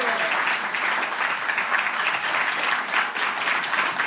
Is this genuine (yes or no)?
yes